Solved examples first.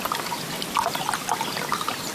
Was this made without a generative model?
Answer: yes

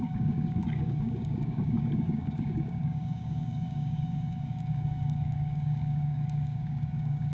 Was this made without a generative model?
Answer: no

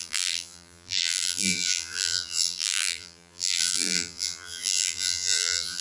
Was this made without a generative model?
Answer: no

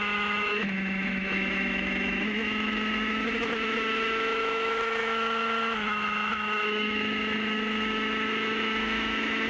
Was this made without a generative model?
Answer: no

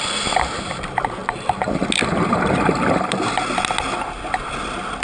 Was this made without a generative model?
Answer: yes